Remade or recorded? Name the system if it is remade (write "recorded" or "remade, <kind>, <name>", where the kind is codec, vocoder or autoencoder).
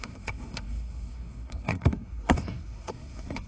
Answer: remade, codec, SNAC